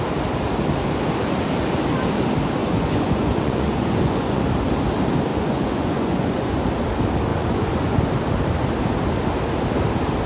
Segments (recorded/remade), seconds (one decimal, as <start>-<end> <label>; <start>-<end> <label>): 0.0-2.6 recorded; 2.6-4.4 remade; 4.4-5.3 recorded; 5.3-6.5 remade; 6.5-7.3 recorded; 7.3-8.0 remade; 8.0-10.3 recorded